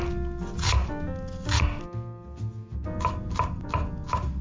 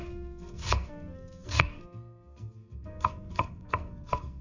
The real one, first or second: first